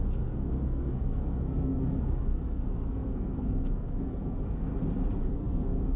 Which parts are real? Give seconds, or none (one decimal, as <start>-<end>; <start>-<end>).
4.7-5.2